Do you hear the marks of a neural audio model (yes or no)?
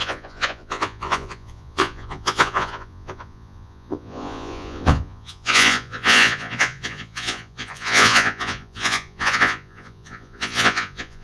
yes